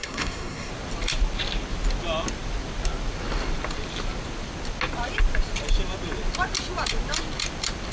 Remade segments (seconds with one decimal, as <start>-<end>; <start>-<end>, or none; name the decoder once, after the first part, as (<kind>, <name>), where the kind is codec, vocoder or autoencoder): 0.0-0.7 (codec, SNAC)